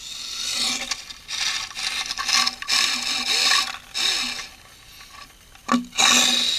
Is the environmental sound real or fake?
real